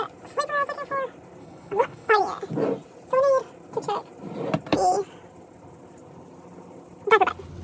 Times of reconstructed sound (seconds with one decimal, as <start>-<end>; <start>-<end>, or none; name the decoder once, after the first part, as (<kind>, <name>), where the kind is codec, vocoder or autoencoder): 1.4-2.2 (codec, HILCodec)